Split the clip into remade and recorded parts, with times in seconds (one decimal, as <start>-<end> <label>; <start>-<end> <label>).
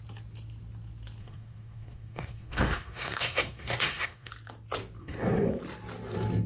0.0-1.2 recorded; 1.2-4.3 remade; 4.3-5.0 recorded; 5.0-5.5 remade; 5.5-6.5 recorded